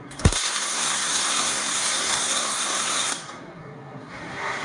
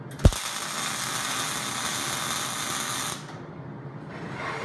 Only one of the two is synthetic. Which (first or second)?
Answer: first